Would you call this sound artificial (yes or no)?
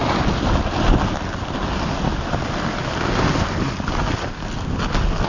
no